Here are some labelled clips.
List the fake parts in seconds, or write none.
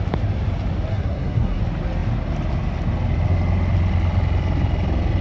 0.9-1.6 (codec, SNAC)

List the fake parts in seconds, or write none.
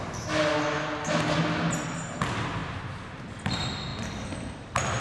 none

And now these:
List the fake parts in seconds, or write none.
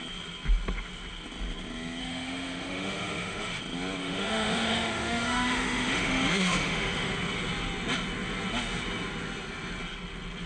2.0-3.6 (autoencoder, DAC-VAE); 4.0-7.1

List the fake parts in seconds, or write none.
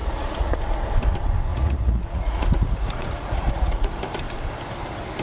0.0-0.6 (vocoder, Vocos); 1.5-4.0